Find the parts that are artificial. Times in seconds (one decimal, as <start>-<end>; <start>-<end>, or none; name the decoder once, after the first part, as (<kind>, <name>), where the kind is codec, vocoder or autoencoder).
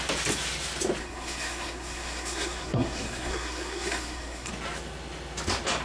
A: 1.0-4.5 (codec, SNAC)